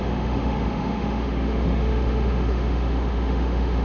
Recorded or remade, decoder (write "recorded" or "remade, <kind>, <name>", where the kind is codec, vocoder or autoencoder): remade, autoencoder, DAC-VAE